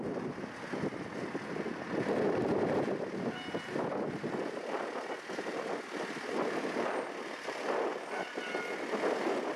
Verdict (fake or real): real